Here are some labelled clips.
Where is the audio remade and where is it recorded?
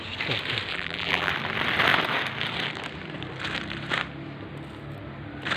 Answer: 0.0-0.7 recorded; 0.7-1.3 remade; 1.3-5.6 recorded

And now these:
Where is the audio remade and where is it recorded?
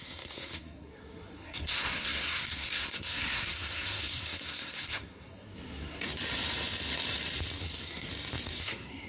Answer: 0.0-6.1 remade; 6.1-7.6 recorded; 7.6-8.1 remade; 8.1-8.6 recorded; 8.6-9.1 remade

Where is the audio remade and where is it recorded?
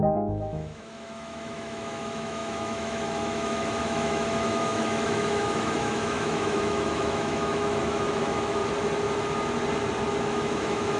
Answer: 0.0-8.6 remade; 8.6-10.2 recorded; 10.2-11.0 remade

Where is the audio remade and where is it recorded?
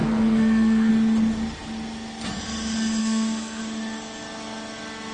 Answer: 0.0-0.9 remade; 0.9-3.0 recorded; 3.0-3.6 remade; 3.6-5.1 recorded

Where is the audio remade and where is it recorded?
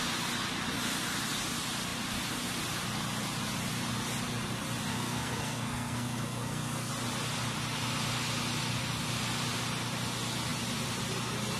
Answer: 0.0-4.9 recorded; 4.9-6.9 remade; 6.9-11.6 recorded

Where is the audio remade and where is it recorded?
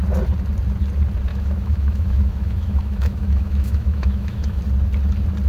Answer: 0.0-1.3 recorded; 1.3-4.6 remade; 4.6-5.5 recorded